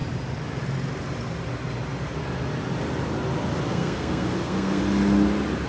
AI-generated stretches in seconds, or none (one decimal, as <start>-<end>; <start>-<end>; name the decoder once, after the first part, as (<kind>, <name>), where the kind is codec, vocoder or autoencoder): 3.7-4.8 (codec, SNAC)